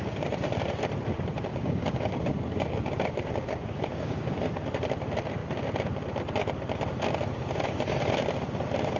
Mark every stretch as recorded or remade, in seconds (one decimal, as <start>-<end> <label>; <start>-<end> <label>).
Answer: 0.0-1.5 recorded; 1.5-4.4 remade; 4.4-9.0 recorded